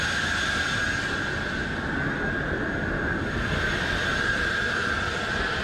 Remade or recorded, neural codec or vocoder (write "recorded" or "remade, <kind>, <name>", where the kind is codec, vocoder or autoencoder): recorded